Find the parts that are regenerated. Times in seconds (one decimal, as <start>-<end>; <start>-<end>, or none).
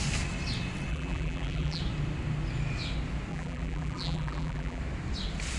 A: 0.9-1.8; 3.3-4.8